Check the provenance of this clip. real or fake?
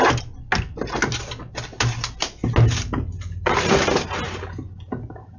real